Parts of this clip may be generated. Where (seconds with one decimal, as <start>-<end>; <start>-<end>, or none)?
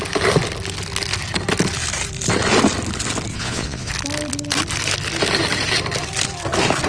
3.3-3.9